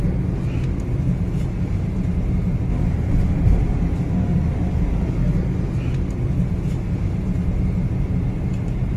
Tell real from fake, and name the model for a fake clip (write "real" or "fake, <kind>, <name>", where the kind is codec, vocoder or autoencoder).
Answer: real